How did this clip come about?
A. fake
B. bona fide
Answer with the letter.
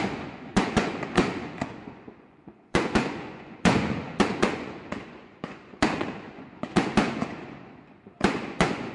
A